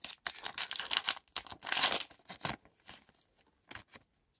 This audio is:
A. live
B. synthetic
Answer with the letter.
A